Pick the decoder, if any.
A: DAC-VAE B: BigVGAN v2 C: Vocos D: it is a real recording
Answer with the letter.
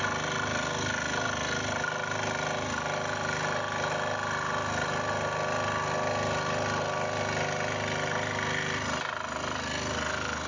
D